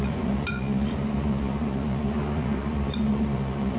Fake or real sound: fake